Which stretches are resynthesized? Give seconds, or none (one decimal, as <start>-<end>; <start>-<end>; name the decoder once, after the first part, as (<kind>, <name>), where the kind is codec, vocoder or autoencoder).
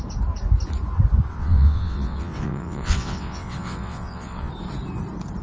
1.3-4.5 (vocoder, WaveNeXt)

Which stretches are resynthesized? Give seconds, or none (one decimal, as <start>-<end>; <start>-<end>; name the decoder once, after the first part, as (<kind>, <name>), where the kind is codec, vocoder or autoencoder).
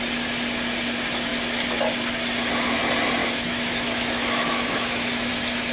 3.2-5.3 (autoencoder, DAC-VAE)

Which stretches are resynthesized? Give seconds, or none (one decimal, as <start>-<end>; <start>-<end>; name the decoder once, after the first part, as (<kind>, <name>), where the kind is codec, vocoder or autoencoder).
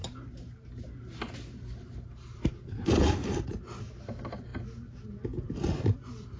none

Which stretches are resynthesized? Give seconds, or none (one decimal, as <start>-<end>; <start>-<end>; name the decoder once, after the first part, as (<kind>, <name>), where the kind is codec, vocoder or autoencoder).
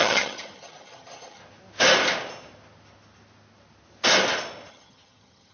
0.0-1.4 (vocoder, HiFi-GAN); 4.7-5.5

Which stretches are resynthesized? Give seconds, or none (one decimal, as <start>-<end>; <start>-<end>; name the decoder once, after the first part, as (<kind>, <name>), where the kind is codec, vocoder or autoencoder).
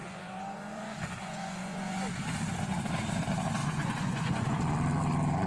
0.0-2.0 (vocoder, Vocos); 3.6-4.6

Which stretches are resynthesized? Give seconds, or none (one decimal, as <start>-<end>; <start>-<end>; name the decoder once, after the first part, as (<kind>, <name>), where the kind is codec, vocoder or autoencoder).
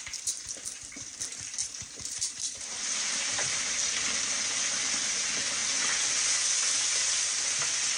0.0-0.5 (vocoder, BigVGAN v2); 1.6-3.6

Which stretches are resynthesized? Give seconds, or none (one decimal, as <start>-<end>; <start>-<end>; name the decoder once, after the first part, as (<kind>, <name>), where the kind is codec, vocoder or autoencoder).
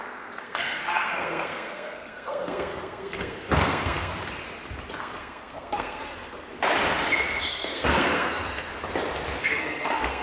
0.0-4.1 (codec, SNAC); 5.0-6.5; 7.5-8.7; 9.4-10.2